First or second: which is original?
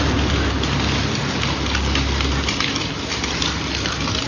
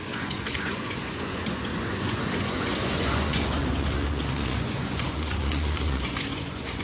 first